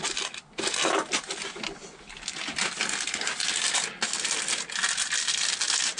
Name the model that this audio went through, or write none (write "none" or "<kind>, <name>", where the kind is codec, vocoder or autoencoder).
none